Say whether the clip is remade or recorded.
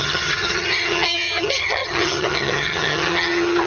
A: remade